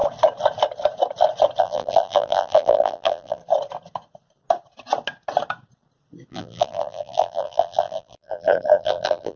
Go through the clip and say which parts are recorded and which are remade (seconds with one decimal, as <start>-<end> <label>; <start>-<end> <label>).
0.0-1.6 recorded; 1.6-3.4 remade; 3.4-6.3 recorded; 6.3-9.4 remade